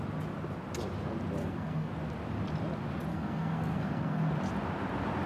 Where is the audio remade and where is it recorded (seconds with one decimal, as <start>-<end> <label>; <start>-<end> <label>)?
0.0-1.4 recorded; 1.4-1.9 remade; 1.9-3.1 recorded; 3.1-4.3 remade; 4.3-5.3 recorded